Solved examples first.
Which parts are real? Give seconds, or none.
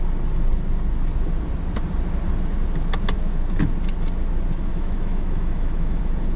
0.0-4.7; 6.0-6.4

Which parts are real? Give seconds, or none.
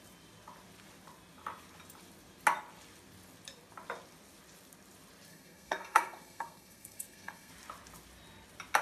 0.0-5.3; 7.5-8.8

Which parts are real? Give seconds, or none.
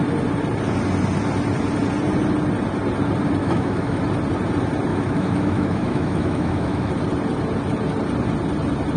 0.0-3.4; 4.0-4.9; 6.9-9.0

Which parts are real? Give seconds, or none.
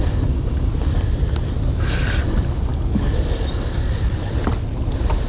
0.7-2.7; 4.3-5.3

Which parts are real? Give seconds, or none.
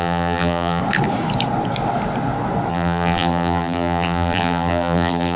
0.8-2.7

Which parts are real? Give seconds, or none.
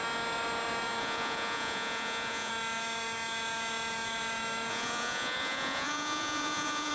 0.0-1.0; 2.5-4.7